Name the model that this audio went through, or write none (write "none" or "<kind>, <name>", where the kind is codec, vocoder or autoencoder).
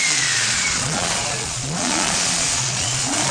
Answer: vocoder, Vocos